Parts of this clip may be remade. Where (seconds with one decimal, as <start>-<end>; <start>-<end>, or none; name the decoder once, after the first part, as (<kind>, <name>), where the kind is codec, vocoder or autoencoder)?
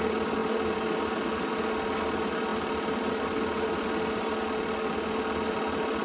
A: none